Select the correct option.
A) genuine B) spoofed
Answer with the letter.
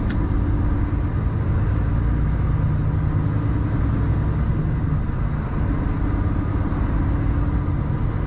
A